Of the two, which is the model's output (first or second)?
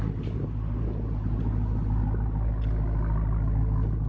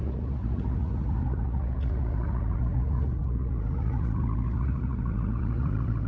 second